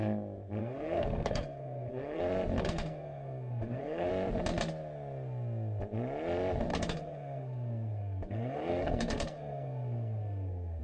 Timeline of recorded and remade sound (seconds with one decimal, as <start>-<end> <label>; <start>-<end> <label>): 0.0-0.6 recorded; 0.6-2.2 remade; 2.2-2.6 recorded; 2.6-4.1 remade; 4.1-6.7 recorded; 6.7-10.8 remade